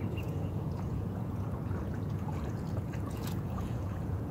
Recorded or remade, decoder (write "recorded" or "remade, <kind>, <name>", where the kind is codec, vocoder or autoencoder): remade, vocoder, Vocos